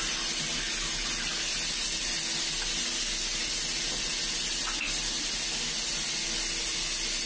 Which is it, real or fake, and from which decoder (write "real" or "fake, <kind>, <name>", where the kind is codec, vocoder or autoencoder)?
real